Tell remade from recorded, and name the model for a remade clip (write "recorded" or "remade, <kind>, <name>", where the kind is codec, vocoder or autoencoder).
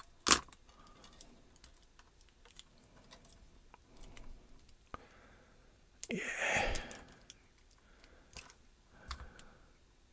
recorded